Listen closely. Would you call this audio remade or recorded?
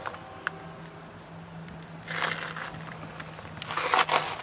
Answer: recorded